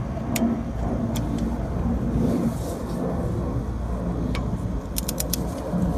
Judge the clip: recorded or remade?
recorded